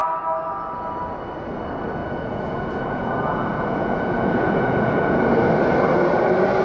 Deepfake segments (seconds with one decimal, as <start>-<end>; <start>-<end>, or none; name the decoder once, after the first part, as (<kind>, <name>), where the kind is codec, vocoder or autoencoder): 2.0-5.2 (vocoder, Vocos)